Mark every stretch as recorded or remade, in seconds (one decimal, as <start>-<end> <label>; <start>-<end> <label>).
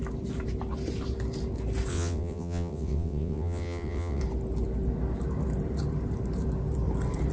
0.0-1.9 recorded; 1.9-4.2 remade; 4.2-7.3 recorded